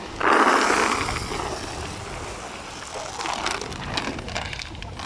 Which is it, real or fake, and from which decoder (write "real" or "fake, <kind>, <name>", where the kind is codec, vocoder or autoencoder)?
real